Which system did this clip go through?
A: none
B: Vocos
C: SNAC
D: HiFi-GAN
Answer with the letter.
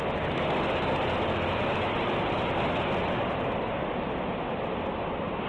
A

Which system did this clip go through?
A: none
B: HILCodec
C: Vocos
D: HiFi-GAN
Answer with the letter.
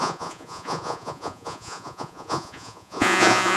C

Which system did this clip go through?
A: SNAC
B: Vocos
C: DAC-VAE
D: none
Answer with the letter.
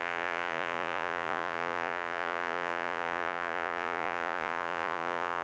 B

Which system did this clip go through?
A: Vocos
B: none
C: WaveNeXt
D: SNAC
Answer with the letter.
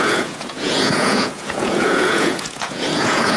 A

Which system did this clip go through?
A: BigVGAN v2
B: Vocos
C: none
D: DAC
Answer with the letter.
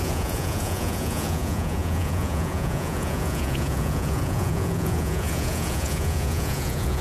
B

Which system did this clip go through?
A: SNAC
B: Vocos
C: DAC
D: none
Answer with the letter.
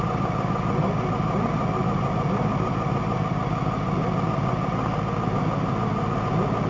D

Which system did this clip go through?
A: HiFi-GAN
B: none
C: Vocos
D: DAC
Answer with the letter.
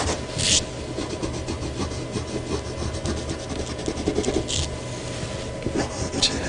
B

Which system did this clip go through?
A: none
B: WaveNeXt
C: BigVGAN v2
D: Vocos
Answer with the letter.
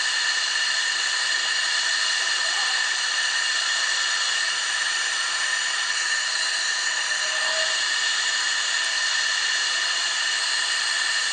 A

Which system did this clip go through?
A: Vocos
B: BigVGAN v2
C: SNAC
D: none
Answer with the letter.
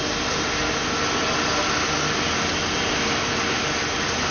D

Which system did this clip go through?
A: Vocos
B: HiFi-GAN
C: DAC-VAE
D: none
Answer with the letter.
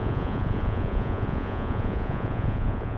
A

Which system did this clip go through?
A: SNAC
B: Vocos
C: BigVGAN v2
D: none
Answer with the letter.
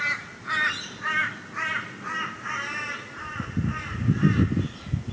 D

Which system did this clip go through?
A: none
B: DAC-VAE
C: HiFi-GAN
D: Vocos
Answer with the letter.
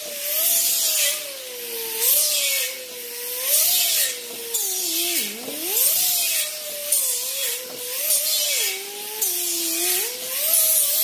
A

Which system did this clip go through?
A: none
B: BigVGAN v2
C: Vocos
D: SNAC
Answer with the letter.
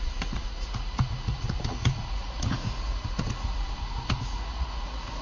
C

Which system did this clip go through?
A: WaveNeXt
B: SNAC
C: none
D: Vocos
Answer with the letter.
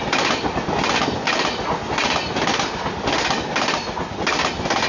C